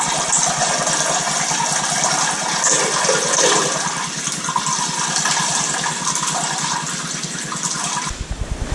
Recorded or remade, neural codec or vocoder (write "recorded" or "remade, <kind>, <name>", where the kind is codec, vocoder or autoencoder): recorded